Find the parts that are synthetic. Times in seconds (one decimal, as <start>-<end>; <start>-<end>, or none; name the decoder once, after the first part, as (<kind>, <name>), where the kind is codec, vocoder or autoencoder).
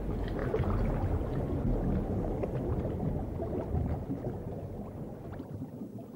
none